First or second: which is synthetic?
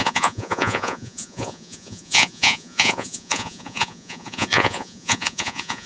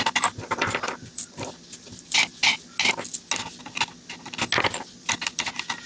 first